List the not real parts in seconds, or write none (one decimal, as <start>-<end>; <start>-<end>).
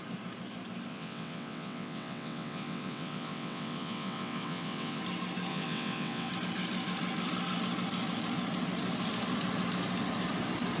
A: 0.9-5.0; 5.5-6.3